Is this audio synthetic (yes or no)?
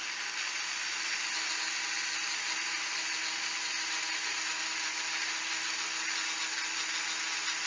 no